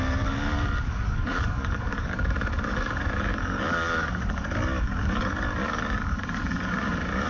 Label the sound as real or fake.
fake